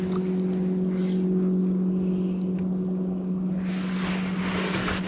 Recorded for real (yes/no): yes